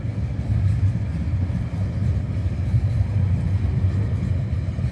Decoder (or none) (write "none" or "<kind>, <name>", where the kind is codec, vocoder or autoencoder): none